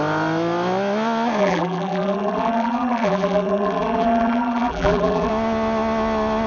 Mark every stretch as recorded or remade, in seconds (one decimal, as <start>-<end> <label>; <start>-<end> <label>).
0.0-1.4 recorded; 1.4-5.3 remade; 5.3-6.5 recorded